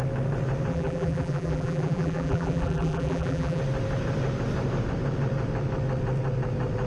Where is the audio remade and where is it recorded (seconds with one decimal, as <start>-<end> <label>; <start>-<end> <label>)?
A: 0.0-0.7 recorded; 0.7-3.6 remade; 3.6-6.9 recorded